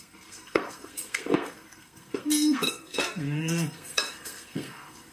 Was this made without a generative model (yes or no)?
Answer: no